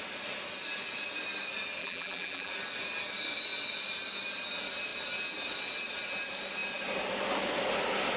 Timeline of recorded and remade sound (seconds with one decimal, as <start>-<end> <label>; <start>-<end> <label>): 0.0-1.8 recorded; 1.8-2.5 remade; 2.5-8.2 recorded